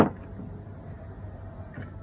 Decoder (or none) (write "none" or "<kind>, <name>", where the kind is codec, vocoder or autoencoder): none